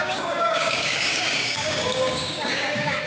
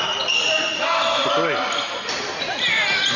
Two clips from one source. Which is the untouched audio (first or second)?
second